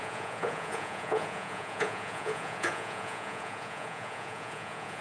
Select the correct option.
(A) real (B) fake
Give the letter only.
B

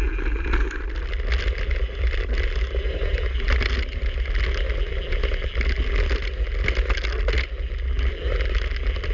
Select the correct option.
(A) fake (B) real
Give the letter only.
B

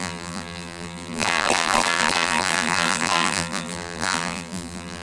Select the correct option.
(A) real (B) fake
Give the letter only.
B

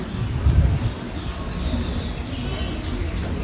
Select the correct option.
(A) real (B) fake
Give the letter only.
A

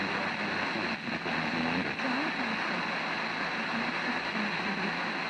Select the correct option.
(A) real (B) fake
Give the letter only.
A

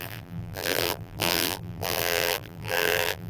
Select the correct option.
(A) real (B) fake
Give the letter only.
B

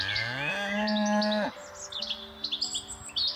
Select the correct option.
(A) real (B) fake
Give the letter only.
A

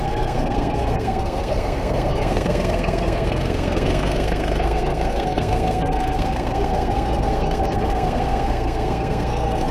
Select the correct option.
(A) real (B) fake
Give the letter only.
B